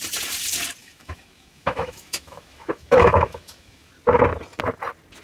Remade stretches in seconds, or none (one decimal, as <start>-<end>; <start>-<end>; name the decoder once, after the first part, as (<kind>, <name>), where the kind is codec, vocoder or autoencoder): 0.8-3.9 (autoencoder, DAC-VAE)